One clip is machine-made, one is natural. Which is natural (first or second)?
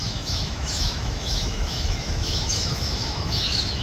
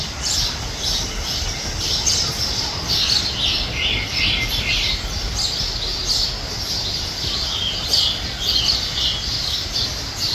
second